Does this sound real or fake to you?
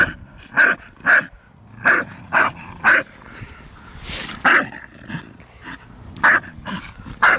real